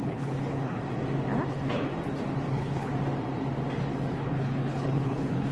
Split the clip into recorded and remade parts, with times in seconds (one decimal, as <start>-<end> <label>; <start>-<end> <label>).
0.0-0.8 remade; 0.8-1.5 recorded; 1.5-1.9 remade; 1.9-2.5 recorded; 2.5-2.9 remade; 2.9-4.1 recorded; 4.1-5.5 remade

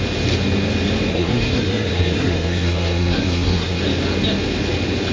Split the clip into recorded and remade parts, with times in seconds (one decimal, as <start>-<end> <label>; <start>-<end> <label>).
0.0-1.1 recorded; 1.1-3.8 remade; 3.8-5.1 recorded

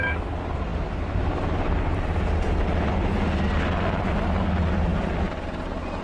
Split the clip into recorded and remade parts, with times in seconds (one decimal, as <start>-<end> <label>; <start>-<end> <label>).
0.0-6.0 recorded

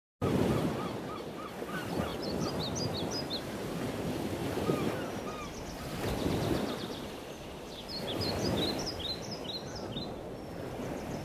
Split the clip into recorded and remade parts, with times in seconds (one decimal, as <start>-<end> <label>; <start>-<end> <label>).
0.0-11.2 recorded

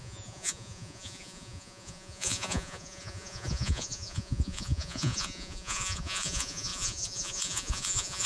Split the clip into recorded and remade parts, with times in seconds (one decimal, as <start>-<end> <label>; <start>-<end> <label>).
0.0-8.3 remade

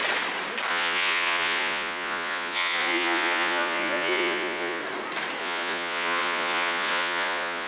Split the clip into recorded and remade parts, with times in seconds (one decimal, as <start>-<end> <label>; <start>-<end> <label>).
0.0-0.7 recorded; 0.7-4.8 remade; 4.8-5.4 recorded; 5.4-7.7 remade

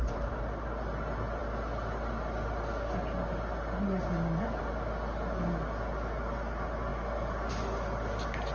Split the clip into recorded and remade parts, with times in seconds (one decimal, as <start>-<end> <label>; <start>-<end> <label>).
0.0-8.5 recorded